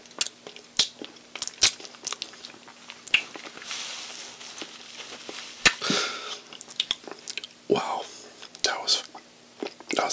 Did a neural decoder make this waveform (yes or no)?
no